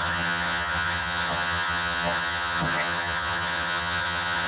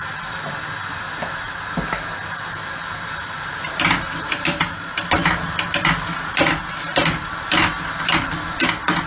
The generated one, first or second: first